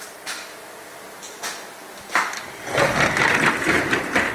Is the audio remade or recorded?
remade